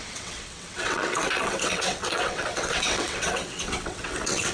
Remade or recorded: remade